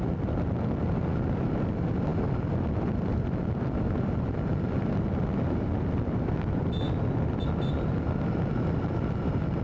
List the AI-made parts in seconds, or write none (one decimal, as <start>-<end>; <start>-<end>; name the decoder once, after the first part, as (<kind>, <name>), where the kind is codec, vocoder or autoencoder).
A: none